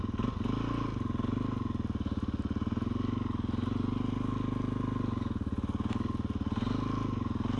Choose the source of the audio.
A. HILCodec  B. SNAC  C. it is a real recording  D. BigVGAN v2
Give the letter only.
C